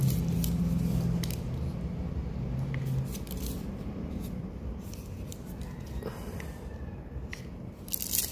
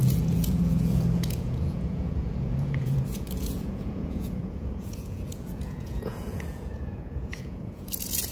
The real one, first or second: first